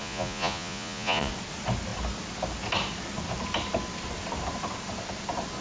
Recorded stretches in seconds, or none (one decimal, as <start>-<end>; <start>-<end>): 1.3-5.6